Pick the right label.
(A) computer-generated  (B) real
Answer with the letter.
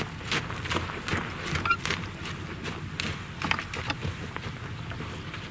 B